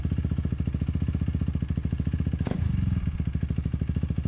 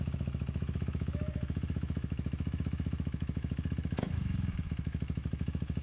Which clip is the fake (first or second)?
second